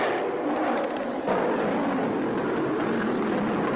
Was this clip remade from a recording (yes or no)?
no